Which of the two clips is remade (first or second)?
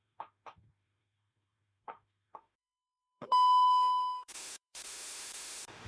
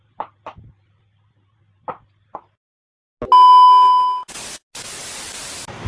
first